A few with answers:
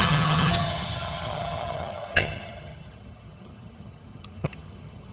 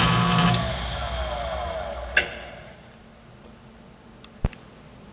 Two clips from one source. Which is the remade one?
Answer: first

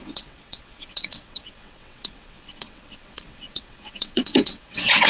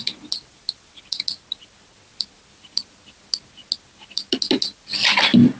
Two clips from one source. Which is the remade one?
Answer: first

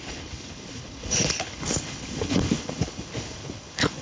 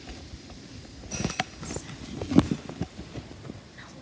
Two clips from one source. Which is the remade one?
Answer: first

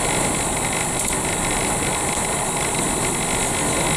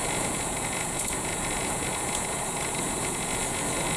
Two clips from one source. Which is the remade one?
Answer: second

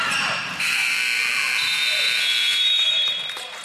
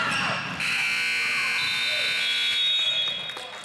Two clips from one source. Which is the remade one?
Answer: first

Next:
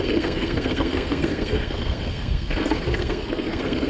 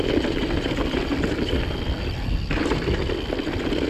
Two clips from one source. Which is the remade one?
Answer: first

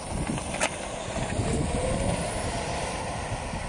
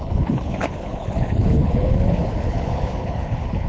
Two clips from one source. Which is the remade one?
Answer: second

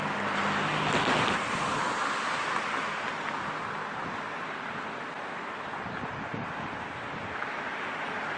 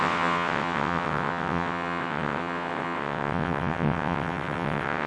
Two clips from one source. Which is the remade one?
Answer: second